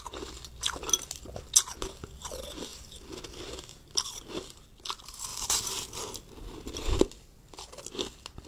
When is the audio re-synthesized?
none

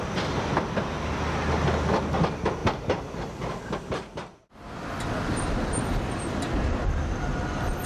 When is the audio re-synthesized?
2.6-3.5 (vocoder, BigVGAN v2)

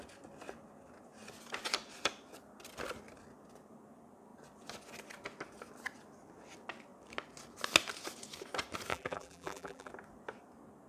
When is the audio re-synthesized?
8.9-9.9 (vocoder, BigVGAN v2)

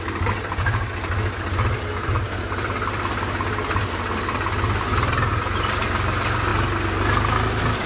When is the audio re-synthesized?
5.3-5.8 (vocoder, BigVGAN v2)

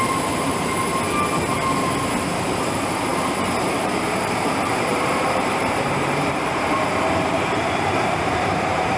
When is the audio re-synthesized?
0.0-0.9 (vocoder, BigVGAN v2); 2.2-9.0

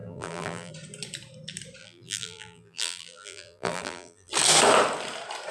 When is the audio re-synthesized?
0.0-0.7 (vocoder, BigVGAN v2); 1.8-4.3